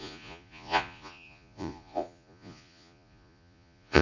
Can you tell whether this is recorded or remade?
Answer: remade